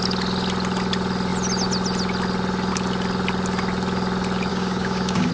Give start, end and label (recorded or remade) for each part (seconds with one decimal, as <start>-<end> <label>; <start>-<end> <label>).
0.0-4.5 recorded; 4.5-5.3 remade